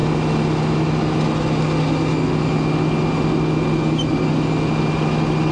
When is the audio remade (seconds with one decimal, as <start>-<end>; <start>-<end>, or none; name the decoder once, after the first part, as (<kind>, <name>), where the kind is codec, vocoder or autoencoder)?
none